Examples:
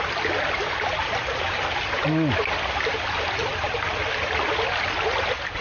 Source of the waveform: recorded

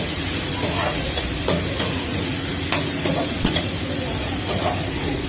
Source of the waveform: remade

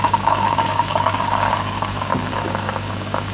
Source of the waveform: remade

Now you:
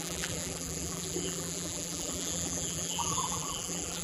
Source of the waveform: remade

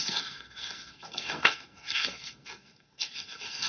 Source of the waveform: remade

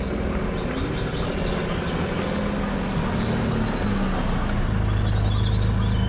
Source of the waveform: recorded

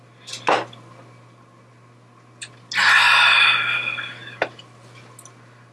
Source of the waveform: recorded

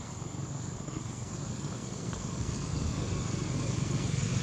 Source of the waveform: remade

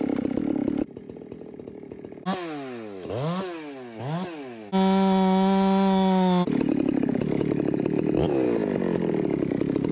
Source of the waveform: recorded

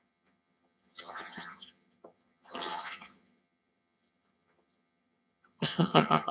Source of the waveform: remade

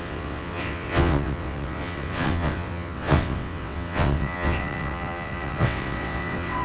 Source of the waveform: remade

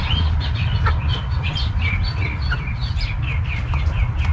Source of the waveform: recorded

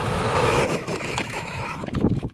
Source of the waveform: remade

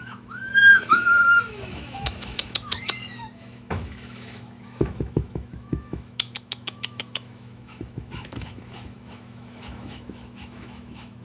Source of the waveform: remade